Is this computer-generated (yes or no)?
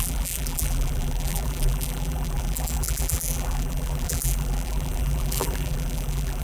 yes